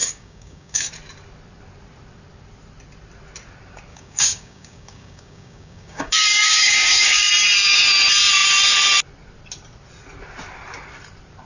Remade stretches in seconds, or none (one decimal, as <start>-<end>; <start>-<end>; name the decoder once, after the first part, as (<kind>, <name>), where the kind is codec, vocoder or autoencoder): 0.0-0.9 (codec, DAC); 3.9-7.3